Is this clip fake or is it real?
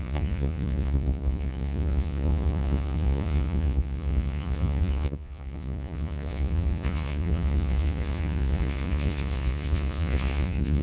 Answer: fake